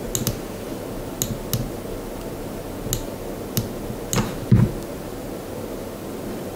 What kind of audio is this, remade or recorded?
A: recorded